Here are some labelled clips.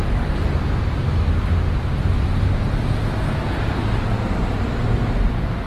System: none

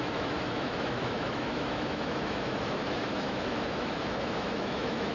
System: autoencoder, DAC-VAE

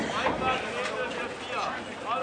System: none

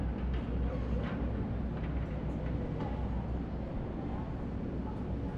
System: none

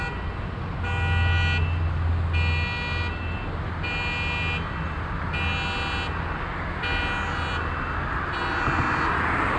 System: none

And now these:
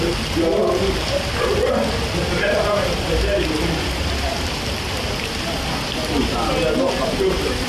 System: none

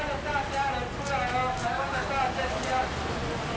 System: none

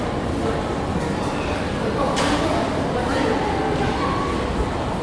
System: none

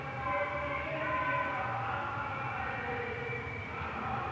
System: none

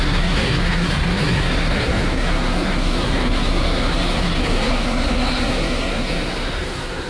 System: codec, SNAC